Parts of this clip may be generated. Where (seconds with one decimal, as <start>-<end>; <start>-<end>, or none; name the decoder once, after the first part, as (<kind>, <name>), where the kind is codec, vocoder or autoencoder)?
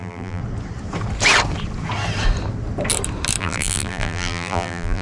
0.0-0.4 (vocoder, BigVGAN v2); 3.4-5.0